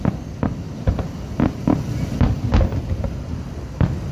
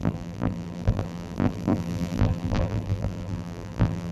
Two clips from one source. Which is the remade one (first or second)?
second